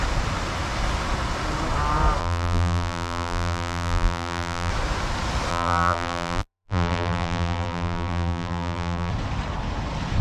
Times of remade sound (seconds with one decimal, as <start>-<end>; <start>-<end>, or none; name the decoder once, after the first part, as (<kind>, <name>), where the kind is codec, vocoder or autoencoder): 2.2-4.7 (vocoder, BigVGAN v2); 5.5-9.1